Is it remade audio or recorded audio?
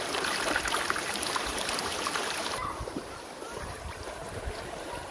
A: remade